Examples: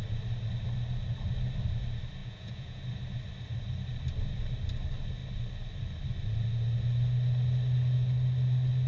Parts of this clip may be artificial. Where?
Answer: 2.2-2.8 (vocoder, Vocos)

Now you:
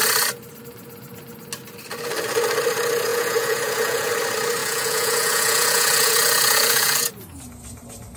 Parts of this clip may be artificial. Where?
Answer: 3.1-4.1 (vocoder, Vocos); 4.6-7.1

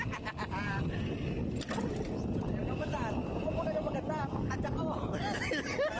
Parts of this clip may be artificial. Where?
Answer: none

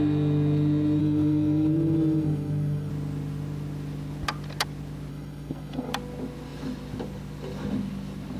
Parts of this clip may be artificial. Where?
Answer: 1.0-2.9 (codec, SNAC); 5.1-5.9

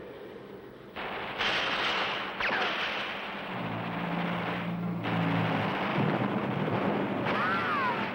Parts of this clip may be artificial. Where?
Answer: 5.9-8.1 (vocoder, BigVGAN v2)

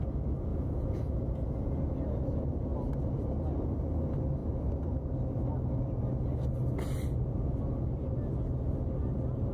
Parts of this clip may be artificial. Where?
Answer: 0.5-1.8 (vocoder, Vocos)

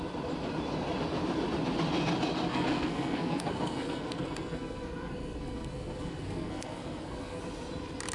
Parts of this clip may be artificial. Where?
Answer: 2.5-7.4 (codec, SNAC)

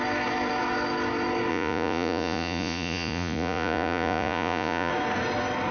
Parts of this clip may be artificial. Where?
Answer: 1.5-4.9 (vocoder, Vocos)